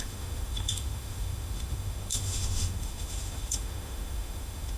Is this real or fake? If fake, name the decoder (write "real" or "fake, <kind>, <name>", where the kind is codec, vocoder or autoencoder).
fake, autoencoder, DAC-VAE